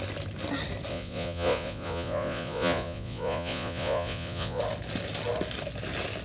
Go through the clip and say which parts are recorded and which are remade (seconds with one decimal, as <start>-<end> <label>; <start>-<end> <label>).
0.0-0.9 recorded; 0.9-4.6 remade; 4.6-6.2 recorded